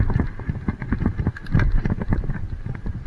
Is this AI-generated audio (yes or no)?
no